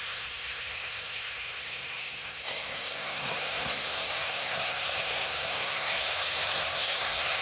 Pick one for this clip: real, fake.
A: fake